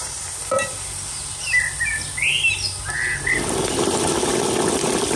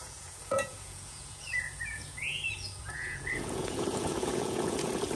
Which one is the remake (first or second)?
second